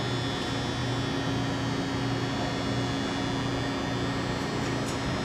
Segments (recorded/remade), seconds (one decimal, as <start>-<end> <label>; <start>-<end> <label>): 0.0-5.2 recorded